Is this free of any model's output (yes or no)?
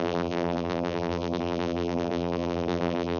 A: no